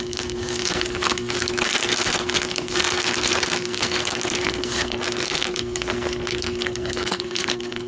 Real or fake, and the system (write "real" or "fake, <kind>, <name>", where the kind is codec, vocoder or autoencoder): fake, codec, SNAC